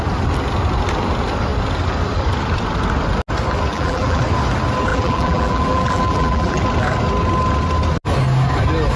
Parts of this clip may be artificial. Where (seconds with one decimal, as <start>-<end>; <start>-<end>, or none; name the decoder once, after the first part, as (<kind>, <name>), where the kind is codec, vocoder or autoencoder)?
3.7-4.2 (vocoder, BigVGAN v2); 4.9-6.6